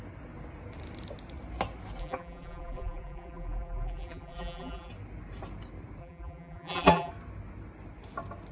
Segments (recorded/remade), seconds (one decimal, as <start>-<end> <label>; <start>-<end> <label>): 0.0-2.0 recorded; 2.0-4.9 remade; 4.9-6.0 recorded; 6.0-7.1 remade; 7.1-8.5 recorded